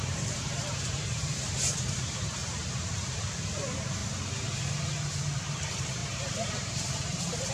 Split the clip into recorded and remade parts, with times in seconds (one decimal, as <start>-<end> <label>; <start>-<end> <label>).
0.0-4.0 remade; 4.0-5.4 recorded; 5.4-7.5 remade